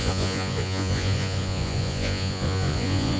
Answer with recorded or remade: remade